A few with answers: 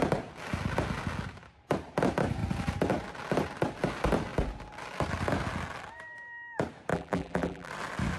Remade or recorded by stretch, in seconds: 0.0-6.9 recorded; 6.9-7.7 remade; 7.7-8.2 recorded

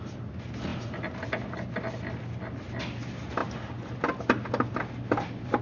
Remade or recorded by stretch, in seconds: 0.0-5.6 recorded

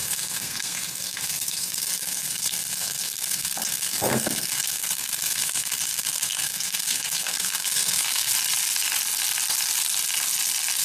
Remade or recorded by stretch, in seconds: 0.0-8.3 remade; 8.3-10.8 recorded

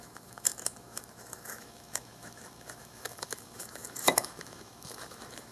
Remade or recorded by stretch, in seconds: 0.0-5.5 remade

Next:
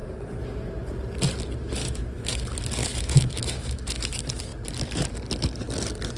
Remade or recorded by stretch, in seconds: 0.0-1.8 recorded; 1.8-2.4 remade; 2.4-2.8 recorded; 2.8-4.1 remade; 4.1-6.2 recorded

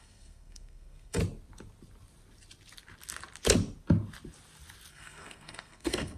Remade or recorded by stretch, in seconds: 0.0-1.2 remade; 1.2-4.9 recorded; 4.9-6.2 remade

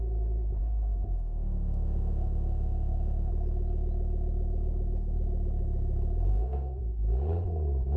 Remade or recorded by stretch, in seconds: 0.0-0.6 recorded; 0.6-3.3 remade; 3.3-6.3 recorded; 6.3-6.8 remade; 6.8-8.0 recorded